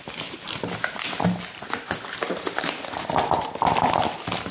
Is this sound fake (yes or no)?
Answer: no